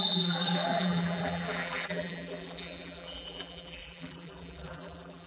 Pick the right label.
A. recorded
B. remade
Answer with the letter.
B